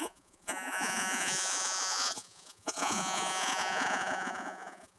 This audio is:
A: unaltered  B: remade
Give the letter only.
B